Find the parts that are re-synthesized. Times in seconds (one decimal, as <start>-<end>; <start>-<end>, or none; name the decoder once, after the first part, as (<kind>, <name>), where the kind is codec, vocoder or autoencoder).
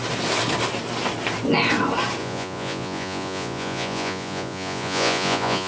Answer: 2.2-5.7 (vocoder, Vocos)